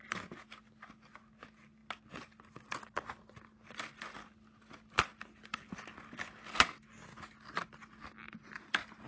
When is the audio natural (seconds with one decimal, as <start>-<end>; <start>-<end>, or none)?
0.0-9.1